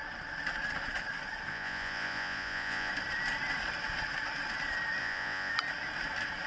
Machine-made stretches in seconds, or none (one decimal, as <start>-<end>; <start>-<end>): 1.5-2.9; 5.0-5.5